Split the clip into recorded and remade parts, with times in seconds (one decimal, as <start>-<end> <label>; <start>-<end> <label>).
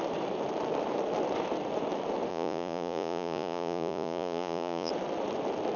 0.0-2.3 recorded; 2.3-4.9 remade; 4.9-5.8 recorded